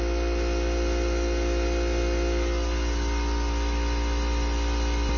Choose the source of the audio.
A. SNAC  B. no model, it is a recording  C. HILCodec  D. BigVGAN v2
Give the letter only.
B